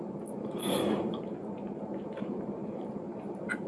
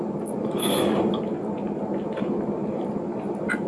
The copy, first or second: first